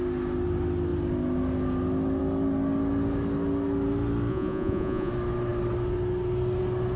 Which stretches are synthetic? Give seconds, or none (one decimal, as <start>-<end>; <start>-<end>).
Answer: 4.3-5.1